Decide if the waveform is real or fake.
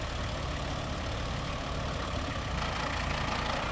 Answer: real